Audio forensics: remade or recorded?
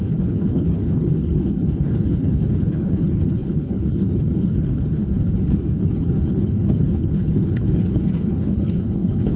remade